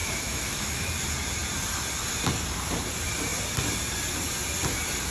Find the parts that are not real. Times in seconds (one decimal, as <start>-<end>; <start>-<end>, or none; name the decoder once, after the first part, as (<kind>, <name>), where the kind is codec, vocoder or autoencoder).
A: 0.0-0.9 (autoencoder, DAC-VAE)